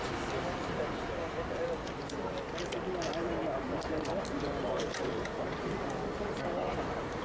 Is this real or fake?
real